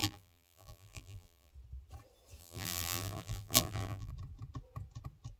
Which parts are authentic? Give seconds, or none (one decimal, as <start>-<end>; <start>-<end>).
1.5-2.4; 4.1-5.4